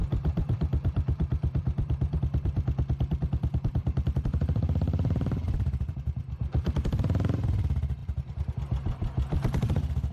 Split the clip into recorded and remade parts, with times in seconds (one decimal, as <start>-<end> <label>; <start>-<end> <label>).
0.0-2.2 remade; 2.2-3.8 recorded; 3.8-7.0 remade; 7.0-8.0 recorded; 8.0-8.5 remade; 8.5-10.1 recorded